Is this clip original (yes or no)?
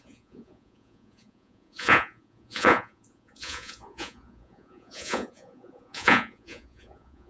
no